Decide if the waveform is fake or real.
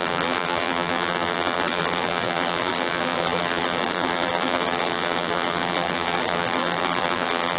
fake